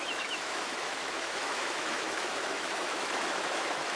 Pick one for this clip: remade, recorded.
remade